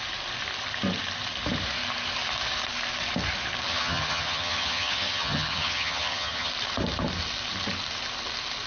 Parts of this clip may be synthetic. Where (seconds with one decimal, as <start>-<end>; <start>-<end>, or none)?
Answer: 3.7-6.5